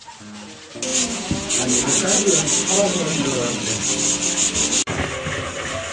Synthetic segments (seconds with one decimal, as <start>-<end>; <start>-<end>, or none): 3.1-3.8

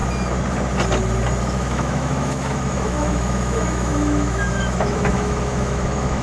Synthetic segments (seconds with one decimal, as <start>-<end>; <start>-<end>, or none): 1.4-6.2

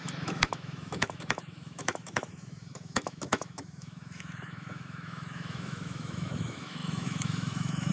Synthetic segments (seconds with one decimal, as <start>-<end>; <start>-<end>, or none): 0.0-7.9

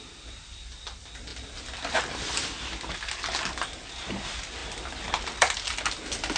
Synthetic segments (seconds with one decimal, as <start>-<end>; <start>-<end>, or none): none

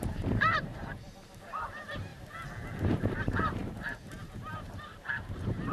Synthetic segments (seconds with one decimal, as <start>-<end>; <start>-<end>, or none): 0.0-2.1; 3.2-5.7

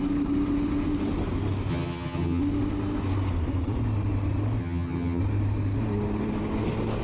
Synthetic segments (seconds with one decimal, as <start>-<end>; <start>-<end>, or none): 1.7-2.4; 4.6-5.2

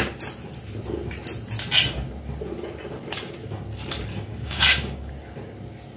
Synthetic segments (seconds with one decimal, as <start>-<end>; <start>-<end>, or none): 4.1-5.1

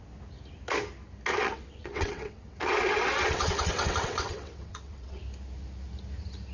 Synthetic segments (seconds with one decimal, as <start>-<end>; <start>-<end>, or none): 1.3-5.2